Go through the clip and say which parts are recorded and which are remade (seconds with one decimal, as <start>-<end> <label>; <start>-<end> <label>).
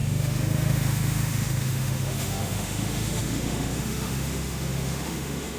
0.0-5.6 remade